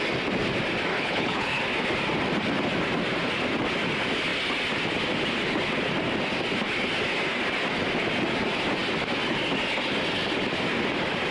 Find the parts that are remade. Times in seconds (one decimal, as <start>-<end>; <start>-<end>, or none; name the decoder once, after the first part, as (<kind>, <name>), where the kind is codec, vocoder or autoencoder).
0.9-1.6 (codec, HILCodec)